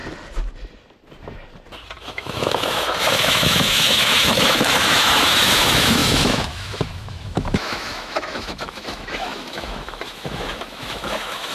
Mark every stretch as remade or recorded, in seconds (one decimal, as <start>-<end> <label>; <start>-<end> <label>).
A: 0.0-2.0 recorded; 2.0-11.5 remade